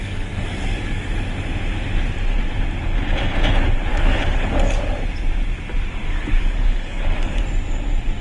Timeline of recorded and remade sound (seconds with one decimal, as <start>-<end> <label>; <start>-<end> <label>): 0.0-1.1 remade; 1.1-3.9 recorded; 3.9-4.8 remade; 4.8-6.0 recorded; 6.0-7.4 remade; 7.4-8.2 recorded